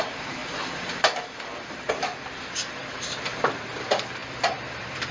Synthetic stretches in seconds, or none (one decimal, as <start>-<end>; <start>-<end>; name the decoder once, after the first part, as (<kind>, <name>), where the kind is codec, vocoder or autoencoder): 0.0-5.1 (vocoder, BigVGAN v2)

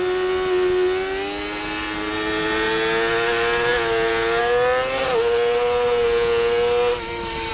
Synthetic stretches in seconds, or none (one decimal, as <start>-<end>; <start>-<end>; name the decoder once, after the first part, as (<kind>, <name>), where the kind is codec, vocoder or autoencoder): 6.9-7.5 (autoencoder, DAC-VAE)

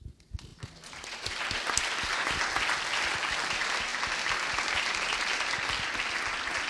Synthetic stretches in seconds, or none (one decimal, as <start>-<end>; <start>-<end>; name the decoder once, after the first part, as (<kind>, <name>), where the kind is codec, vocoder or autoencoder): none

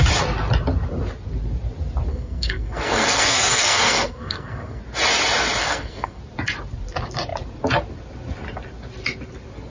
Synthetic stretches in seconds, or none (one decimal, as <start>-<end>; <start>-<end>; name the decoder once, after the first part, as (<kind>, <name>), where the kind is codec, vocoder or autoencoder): 2.1-4.8 (codec, SNAC); 5.6-6.2

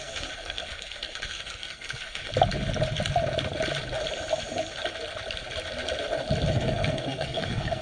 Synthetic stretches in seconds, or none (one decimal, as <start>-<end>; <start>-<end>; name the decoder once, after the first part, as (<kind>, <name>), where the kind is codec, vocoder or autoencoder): 0.0-2.3 (codec, SNAC); 6.5-7.8

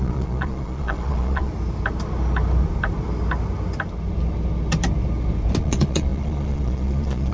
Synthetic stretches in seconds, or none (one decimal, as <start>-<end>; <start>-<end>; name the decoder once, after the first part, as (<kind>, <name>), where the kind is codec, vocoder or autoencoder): 0.0-1.5 (vocoder, Vocos); 5.6-7.3